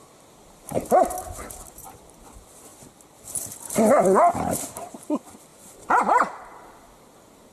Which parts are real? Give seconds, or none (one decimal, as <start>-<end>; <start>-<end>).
0.0-7.5